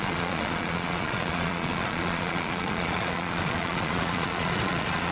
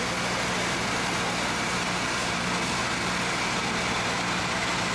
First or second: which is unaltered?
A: second